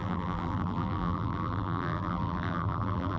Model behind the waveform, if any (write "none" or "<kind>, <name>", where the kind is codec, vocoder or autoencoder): vocoder, BigVGAN v2